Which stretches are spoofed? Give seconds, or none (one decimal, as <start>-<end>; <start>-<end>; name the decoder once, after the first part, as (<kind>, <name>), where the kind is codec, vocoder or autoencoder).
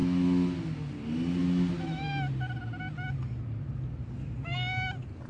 none